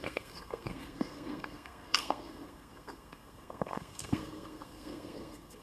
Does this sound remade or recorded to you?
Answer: remade